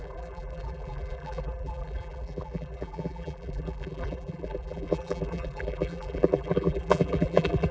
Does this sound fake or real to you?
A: fake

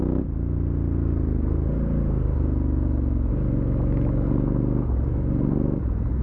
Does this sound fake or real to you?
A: real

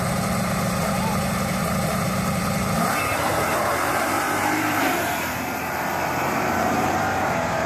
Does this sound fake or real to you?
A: fake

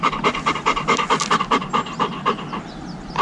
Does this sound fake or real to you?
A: real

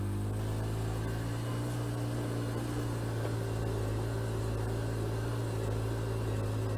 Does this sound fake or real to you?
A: real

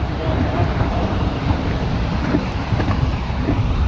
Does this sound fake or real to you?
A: fake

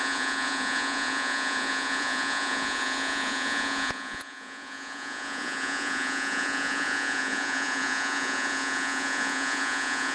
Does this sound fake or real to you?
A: fake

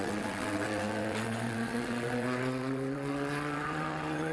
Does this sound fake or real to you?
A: fake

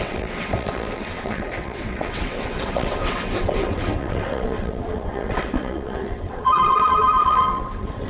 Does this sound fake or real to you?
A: fake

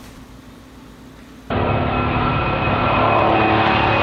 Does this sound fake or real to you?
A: real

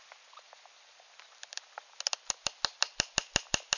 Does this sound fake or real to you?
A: real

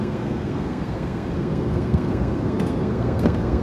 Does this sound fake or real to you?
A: fake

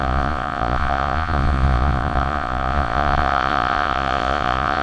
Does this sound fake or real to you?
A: fake